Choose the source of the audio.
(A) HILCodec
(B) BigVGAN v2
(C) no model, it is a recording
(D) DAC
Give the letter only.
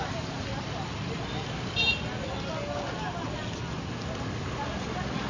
C